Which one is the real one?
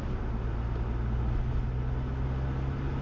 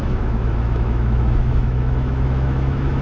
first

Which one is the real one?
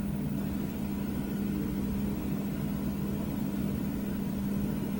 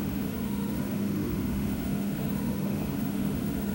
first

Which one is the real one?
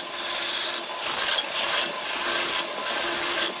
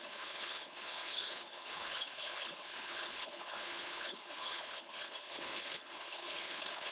first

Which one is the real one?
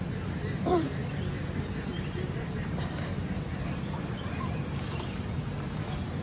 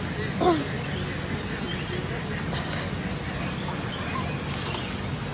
second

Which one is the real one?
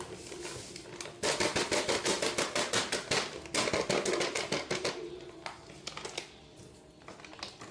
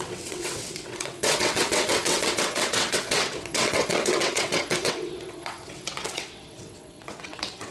first